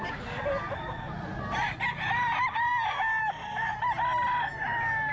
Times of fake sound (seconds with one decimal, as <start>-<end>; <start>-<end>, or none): none

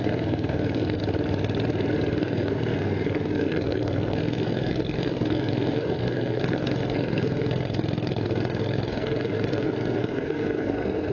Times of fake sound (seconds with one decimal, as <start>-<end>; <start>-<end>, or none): 0.0-1.0; 2.1-11.1